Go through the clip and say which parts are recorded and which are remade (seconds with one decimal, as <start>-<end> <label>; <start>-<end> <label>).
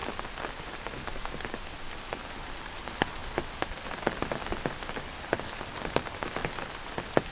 0.0-2.7 recorded; 2.7-7.3 remade